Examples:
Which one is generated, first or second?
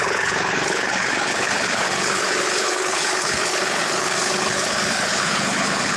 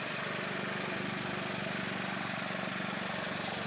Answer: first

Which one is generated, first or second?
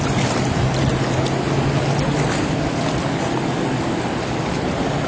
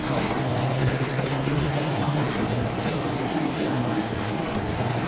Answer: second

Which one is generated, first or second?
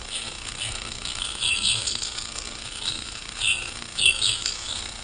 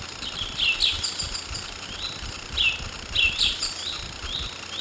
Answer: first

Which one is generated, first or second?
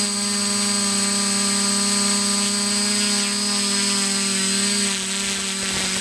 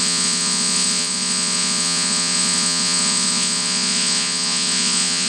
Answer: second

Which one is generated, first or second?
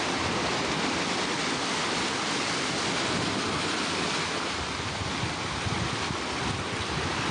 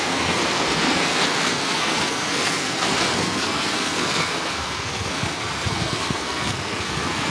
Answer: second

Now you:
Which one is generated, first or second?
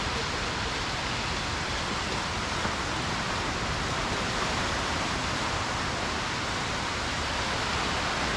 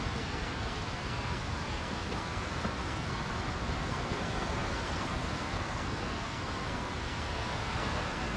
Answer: second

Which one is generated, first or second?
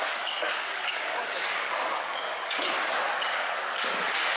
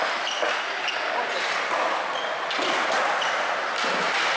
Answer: first